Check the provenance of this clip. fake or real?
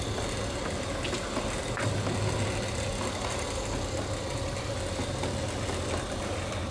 real